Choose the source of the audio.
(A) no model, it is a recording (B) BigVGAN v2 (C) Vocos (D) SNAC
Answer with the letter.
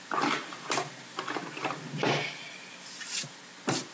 A